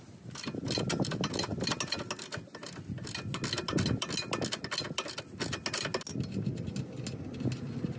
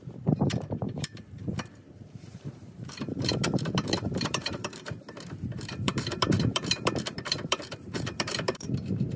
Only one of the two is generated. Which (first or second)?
second